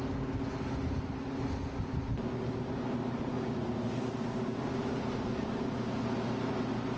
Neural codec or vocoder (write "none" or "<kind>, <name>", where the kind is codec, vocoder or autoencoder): none